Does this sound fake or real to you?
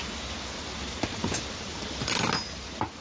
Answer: real